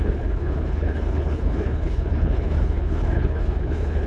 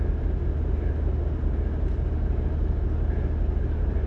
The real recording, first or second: second